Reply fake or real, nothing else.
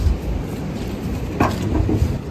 real